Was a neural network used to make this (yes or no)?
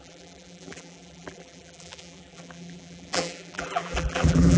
yes